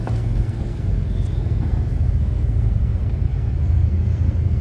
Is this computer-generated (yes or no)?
yes